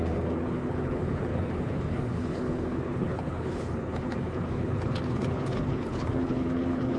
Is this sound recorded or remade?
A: remade